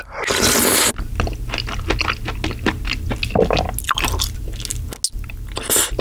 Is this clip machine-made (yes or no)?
no